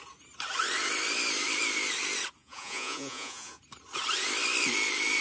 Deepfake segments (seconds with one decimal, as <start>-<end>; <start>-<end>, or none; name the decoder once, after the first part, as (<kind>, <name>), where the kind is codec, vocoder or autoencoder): 2.4-3.6 (vocoder, Vocos)